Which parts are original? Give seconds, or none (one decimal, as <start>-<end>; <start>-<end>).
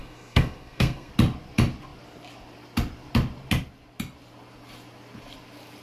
1.1-5.8